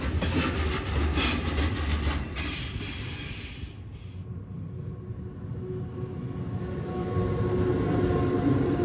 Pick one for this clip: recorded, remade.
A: recorded